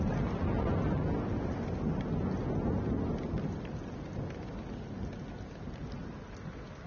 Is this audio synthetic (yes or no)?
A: no